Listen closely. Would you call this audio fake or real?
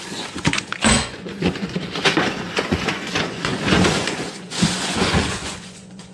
fake